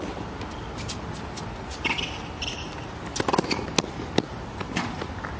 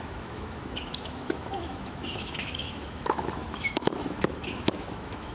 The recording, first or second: first